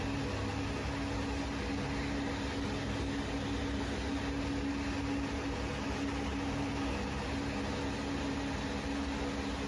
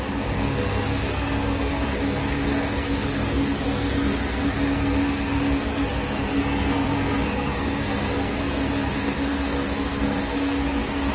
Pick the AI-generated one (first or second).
second